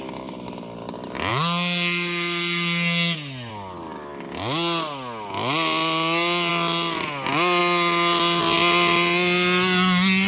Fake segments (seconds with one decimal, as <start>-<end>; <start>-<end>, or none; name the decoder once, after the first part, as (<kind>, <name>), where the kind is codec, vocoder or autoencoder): none